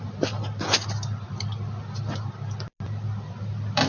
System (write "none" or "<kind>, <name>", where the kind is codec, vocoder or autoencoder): none